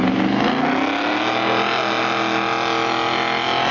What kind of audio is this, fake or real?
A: real